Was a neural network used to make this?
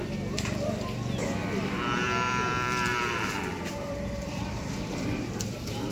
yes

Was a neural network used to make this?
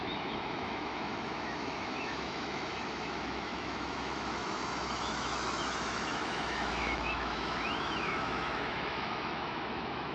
yes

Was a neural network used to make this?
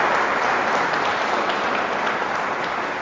no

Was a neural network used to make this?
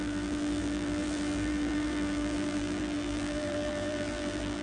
yes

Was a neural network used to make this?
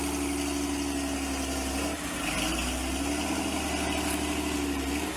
no